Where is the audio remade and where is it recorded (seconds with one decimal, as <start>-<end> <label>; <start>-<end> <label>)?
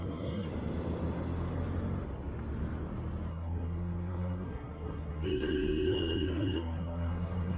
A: 0.0-0.5 remade; 0.5-3.3 recorded; 3.3-7.6 remade